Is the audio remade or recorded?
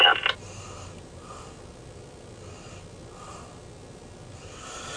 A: recorded